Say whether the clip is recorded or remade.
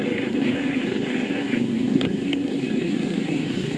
remade